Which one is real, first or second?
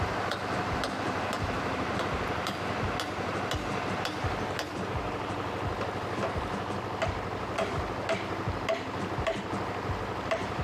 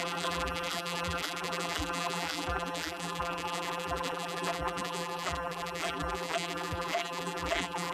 first